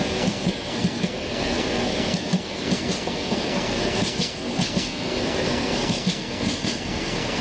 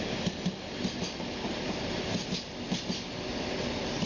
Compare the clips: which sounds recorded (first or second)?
second